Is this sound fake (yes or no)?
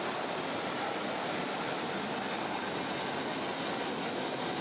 no